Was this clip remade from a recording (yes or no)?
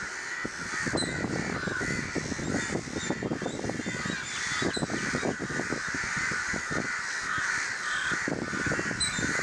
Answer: no